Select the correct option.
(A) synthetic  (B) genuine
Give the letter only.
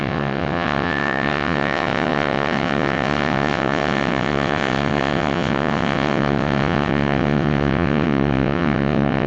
A